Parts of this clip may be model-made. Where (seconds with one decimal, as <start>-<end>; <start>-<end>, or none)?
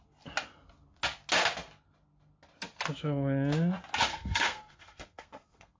4.1-5.8